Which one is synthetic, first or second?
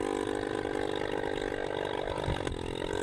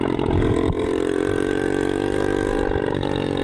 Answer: second